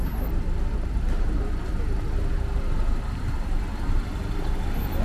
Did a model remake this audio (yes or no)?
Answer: no